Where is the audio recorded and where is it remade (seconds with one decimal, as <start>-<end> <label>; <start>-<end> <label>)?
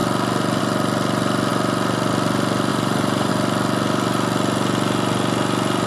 0.0-2.7 recorded; 2.7-3.3 remade; 3.3-5.9 recorded